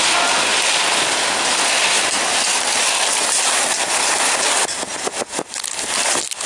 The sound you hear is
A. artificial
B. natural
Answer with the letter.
B